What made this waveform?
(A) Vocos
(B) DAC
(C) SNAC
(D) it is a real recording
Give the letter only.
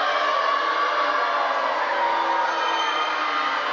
D